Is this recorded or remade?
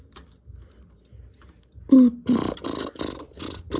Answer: recorded